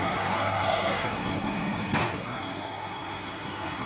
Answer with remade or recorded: remade